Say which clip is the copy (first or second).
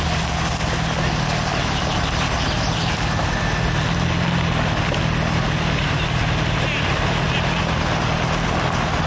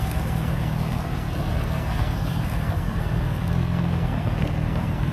second